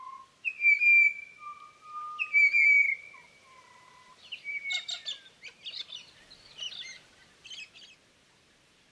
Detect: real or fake real